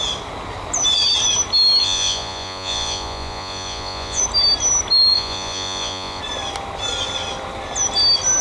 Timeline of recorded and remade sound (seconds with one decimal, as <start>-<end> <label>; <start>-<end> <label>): 0.0-1.8 recorded; 1.8-4.2 remade; 4.2-5.1 recorded; 5.1-6.2 remade; 6.2-8.4 recorded